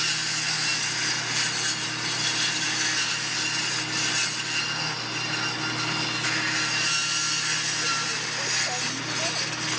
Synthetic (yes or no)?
no